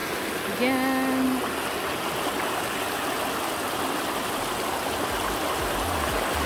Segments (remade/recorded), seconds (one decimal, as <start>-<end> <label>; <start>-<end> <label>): 0.0-6.5 recorded